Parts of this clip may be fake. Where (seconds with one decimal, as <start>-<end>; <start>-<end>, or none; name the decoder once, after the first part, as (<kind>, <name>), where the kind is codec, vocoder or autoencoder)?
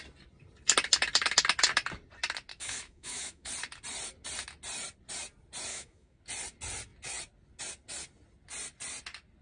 2.5-3.5 (autoencoder, DAC-VAE); 5.7-6.2